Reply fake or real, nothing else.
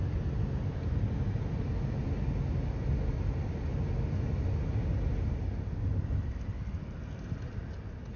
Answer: real